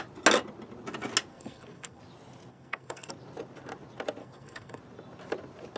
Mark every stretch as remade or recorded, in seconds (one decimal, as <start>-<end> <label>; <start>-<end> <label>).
0.0-1.3 recorded; 1.3-2.0 remade; 2.0-2.5 recorded; 2.5-3.1 remade; 3.1-4.2 recorded; 4.2-4.8 remade; 4.8-5.8 recorded

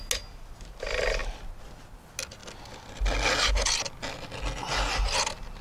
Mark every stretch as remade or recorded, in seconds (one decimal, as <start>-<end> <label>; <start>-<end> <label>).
0.0-5.6 recorded

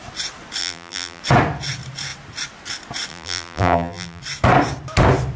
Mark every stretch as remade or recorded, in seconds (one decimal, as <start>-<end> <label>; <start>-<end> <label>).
0.0-0.6 recorded; 0.6-1.2 remade; 1.2-3.1 recorded; 3.1-4.2 remade; 4.2-5.4 recorded

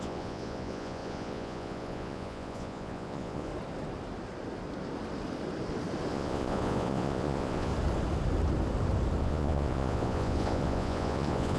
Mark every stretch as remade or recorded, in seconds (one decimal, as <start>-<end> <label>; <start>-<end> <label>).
0.0-3.5 remade; 3.5-6.1 recorded; 6.1-7.7 remade; 7.7-9.2 recorded; 9.2-11.6 remade

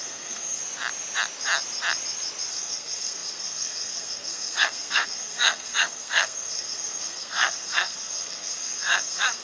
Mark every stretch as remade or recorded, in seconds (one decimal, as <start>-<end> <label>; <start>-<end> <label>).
0.0-0.6 remade; 0.6-2.5 recorded; 2.5-9.4 remade

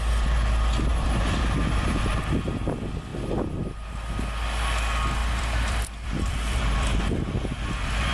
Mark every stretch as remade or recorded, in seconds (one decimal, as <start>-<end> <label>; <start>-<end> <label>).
0.0-0.9 recorded; 0.9-2.1 remade; 2.1-5.2 recorded; 5.2-8.1 remade